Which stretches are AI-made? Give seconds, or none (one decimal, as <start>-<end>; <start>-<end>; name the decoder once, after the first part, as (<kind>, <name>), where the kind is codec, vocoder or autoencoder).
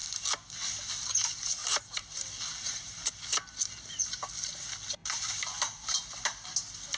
1.6-3.1 (vocoder, BigVGAN v2); 5.0-5.9